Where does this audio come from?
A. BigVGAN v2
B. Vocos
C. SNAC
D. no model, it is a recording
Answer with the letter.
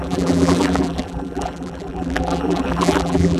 A